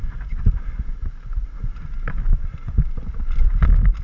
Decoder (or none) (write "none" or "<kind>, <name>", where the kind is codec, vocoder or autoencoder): none